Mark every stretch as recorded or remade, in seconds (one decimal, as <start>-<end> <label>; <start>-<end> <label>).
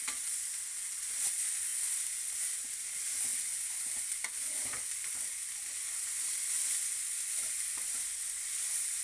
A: 0.0-9.0 recorded